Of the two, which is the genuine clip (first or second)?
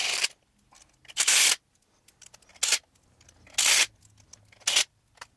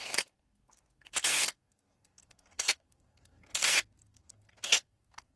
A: first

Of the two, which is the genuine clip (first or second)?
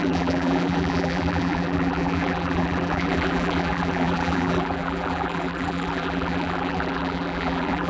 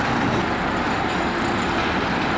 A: second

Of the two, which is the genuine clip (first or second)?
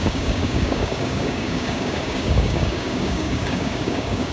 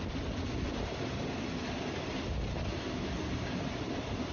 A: second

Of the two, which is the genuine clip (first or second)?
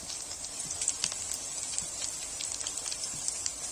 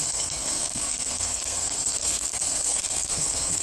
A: first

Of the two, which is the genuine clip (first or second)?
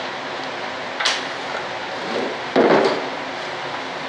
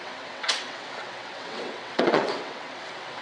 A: first